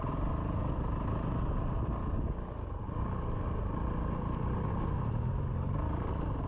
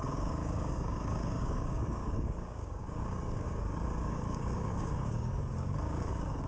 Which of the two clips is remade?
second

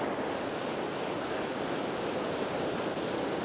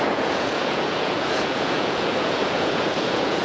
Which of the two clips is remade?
second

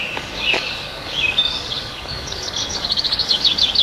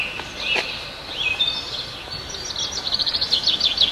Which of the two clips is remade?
first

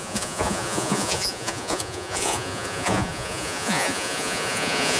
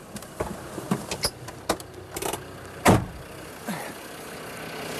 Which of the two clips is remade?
first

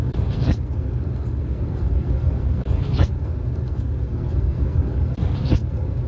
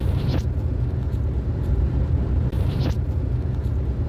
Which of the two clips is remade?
first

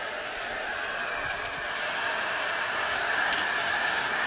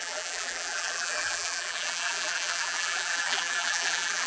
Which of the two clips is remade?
second